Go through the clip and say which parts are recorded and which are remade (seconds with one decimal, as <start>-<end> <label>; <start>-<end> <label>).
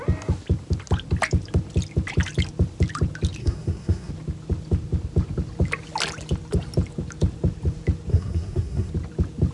0.0-3.4 recorded; 3.4-4.1 remade; 4.1-8.1 recorded; 8.1-8.9 remade; 8.9-9.5 recorded